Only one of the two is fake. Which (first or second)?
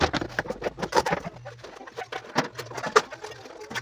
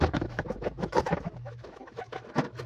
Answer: second